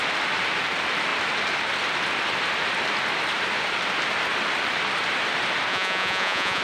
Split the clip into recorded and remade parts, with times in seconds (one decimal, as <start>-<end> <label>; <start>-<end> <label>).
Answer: 0.0-5.7 recorded; 5.7-6.6 remade